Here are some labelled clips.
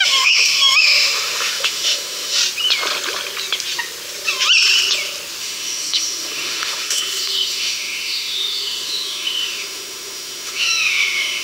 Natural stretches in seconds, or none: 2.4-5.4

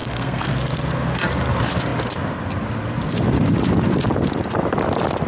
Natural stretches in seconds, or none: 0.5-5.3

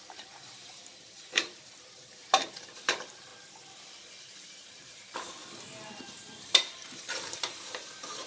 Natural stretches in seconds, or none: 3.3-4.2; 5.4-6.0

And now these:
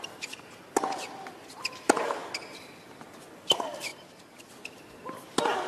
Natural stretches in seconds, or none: 0.0-3.9; 4.5-5.7

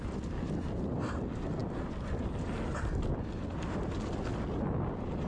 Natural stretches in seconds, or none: 0.0-5.3

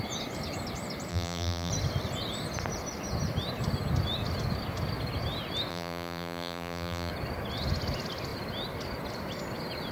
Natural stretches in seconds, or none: 0.0-1.1; 1.7-5.7; 7.1-9.9

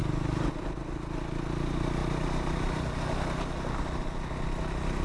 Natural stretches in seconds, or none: 0.0-5.0